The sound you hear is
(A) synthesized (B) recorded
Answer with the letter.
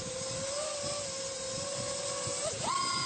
B